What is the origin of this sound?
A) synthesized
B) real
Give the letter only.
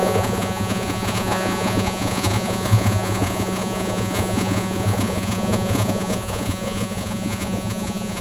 A